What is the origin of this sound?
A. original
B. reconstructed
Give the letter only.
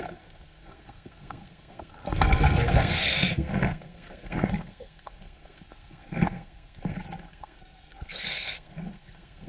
B